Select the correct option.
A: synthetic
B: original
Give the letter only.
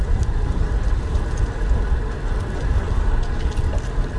B